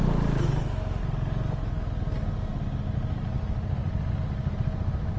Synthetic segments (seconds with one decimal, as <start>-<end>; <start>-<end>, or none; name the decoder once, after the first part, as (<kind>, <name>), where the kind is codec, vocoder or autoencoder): none